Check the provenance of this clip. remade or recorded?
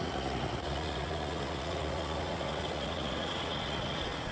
remade